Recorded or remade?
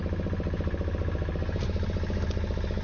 recorded